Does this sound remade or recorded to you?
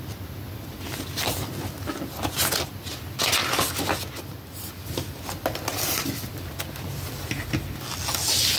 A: recorded